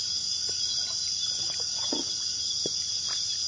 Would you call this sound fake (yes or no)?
no